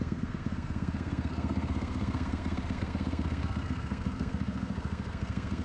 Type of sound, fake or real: fake